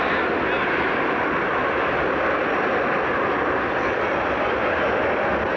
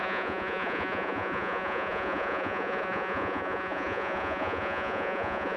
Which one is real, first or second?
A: first